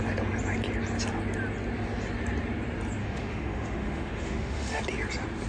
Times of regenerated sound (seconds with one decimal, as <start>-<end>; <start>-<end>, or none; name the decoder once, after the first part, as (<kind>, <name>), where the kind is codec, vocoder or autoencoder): 3.0-4.8 (autoencoder, DAC-VAE)